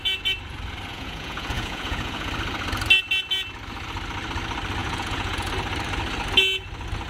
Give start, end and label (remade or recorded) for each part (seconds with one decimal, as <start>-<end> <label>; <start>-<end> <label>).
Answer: 0.0-0.9 recorded; 0.9-2.3 remade; 2.3-4.8 recorded; 4.8-5.5 remade; 5.5-7.1 recorded